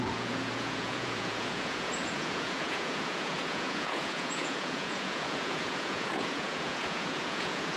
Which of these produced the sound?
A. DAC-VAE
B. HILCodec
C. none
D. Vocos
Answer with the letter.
D